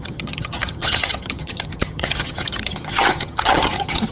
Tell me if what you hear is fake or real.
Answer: fake